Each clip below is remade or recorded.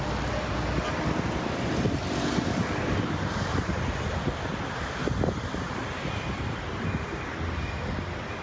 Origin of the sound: recorded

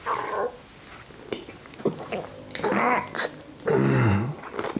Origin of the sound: recorded